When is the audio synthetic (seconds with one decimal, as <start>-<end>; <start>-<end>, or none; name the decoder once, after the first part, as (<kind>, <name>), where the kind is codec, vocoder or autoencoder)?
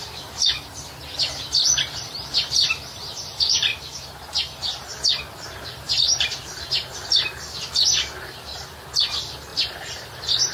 0.0-3.7 (vocoder, BigVGAN v2); 5.5-8.5; 9.1-10.5